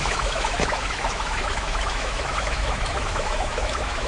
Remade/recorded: remade